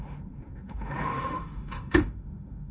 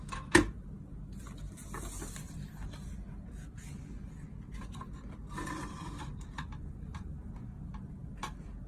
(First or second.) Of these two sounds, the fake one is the first